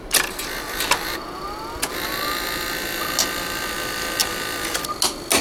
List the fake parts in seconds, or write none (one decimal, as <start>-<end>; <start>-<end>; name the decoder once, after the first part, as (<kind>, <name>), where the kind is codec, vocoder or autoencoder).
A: none